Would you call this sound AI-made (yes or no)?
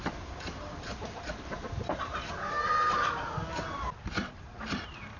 no